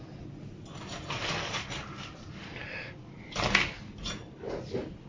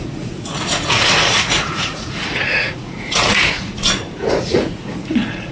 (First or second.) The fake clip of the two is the second